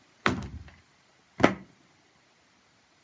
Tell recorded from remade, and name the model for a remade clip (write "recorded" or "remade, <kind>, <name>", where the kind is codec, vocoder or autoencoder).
recorded